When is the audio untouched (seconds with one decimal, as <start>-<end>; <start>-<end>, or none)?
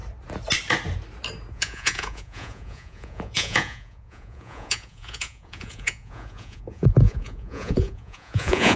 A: 0.0-1.5